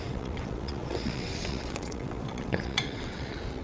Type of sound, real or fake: fake